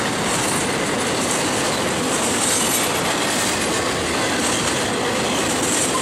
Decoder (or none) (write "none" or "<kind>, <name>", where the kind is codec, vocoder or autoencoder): none